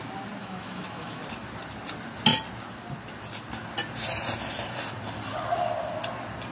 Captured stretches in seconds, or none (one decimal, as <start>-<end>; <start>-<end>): 0.0-0.4; 1.2-6.5